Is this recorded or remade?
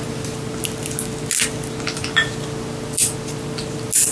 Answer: recorded